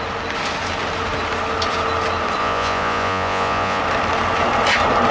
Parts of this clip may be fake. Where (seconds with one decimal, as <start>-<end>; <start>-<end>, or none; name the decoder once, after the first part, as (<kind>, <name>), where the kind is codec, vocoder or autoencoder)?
2.4-3.8 (vocoder, Vocos)